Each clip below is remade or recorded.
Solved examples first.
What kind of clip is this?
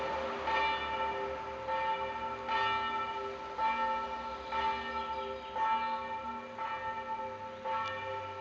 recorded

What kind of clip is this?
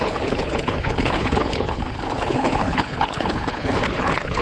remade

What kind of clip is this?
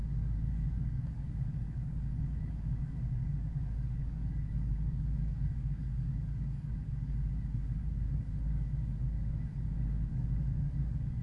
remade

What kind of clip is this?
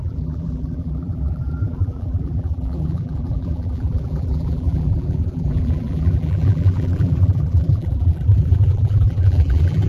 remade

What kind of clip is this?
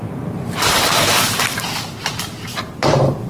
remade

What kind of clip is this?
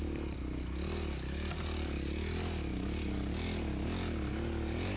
recorded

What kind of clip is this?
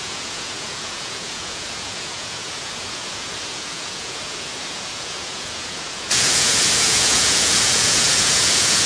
remade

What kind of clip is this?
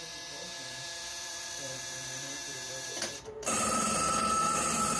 remade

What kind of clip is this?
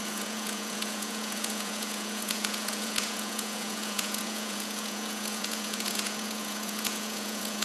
remade